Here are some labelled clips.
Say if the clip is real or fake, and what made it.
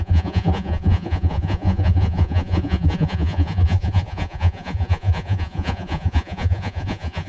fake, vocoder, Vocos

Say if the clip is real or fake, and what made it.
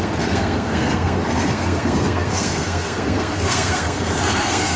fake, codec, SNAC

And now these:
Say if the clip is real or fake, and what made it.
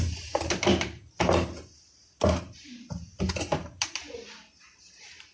fake, vocoder, BigVGAN v2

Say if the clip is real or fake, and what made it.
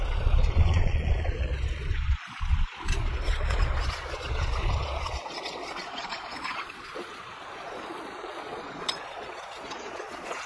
fake, vocoder, Vocos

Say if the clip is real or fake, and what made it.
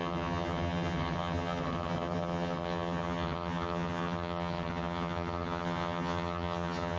fake, vocoder, HiFi-GAN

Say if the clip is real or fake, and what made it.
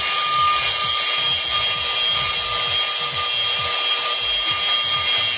real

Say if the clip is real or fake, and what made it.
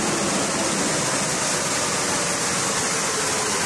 real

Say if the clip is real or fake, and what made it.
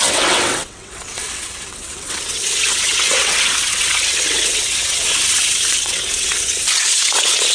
fake, vocoder, WaveNeXt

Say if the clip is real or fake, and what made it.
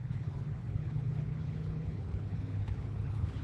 fake, codec, HILCodec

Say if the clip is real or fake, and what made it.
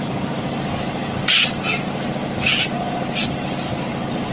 real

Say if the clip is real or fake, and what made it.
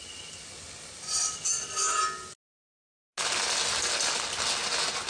real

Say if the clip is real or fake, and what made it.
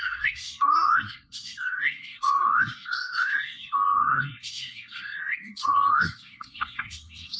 fake, codec, SNAC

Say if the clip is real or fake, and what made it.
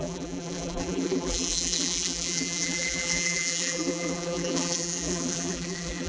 fake, vocoder, BigVGAN v2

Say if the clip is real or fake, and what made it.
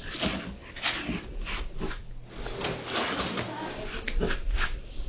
real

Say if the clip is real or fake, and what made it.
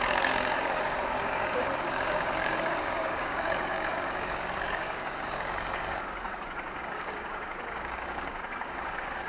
fake, codec, DAC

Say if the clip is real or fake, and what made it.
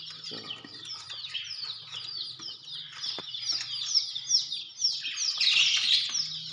real